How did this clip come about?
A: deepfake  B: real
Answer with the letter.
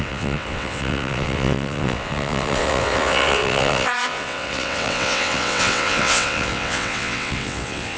A